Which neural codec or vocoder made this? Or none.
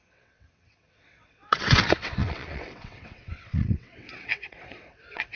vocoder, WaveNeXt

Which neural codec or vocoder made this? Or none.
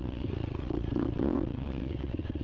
vocoder, WaveNeXt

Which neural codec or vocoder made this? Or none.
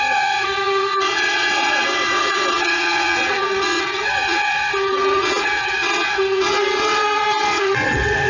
vocoder, WaveNeXt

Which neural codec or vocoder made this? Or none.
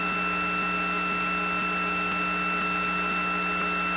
none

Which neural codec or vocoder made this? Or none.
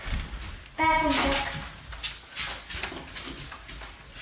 none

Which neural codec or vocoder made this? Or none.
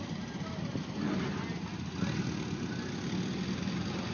none